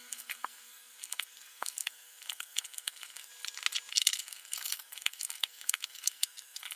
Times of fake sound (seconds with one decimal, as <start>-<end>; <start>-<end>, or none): 0.0-3.3; 3.9-6.8